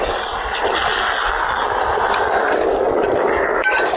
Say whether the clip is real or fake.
real